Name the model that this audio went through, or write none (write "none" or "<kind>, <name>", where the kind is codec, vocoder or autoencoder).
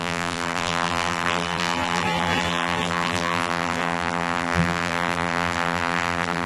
vocoder, BigVGAN v2